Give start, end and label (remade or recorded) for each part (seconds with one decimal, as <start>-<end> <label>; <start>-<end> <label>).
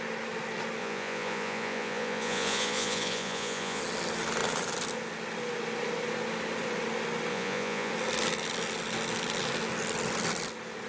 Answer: 0.0-0.8 recorded; 0.8-3.8 remade; 3.8-7.3 recorded; 7.3-7.9 remade; 7.9-10.9 recorded